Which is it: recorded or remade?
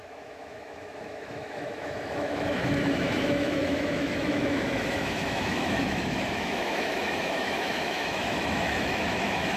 remade